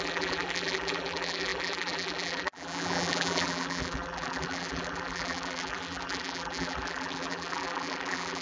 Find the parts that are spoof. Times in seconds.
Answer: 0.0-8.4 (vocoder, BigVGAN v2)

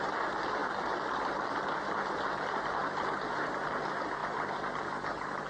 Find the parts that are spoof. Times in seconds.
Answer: none

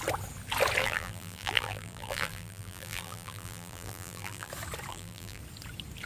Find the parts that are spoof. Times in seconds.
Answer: 0.8-4.5 (vocoder, BigVGAN v2); 4.9-5.4

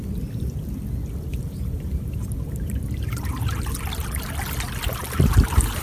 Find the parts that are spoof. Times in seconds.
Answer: 1.3-3.8 (vocoder, BigVGAN v2); 5.0-5.8

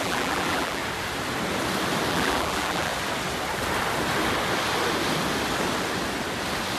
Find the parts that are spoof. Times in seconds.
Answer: 0.0-0.8 (vocoder, BigVGAN v2); 2.1-2.9

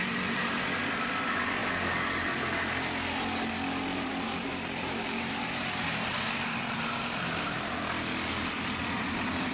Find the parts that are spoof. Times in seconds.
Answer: 0.0-0.6 (vocoder, BigVGAN v2); 3.9-7.8

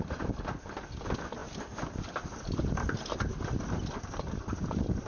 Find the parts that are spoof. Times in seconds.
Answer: 1.4-3.0 (vocoder, BigVGAN v2)

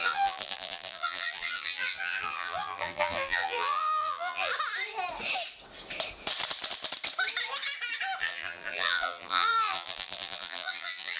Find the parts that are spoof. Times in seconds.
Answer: 0.0-4.5 (vocoder, BigVGAN v2); 8.2-11.2